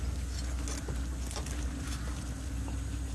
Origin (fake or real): real